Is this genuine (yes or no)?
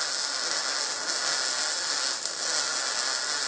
yes